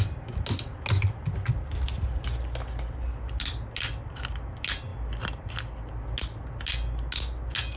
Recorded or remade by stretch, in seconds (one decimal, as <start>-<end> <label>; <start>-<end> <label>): 0.0-7.8 recorded